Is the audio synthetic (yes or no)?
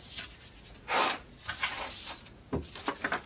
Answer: no